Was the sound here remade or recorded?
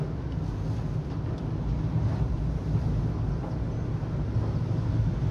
recorded